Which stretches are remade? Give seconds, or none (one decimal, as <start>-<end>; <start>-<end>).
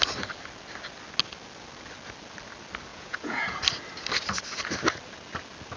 2.9-3.6